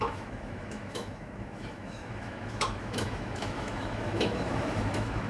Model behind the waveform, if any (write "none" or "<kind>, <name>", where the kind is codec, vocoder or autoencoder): autoencoder, DAC-VAE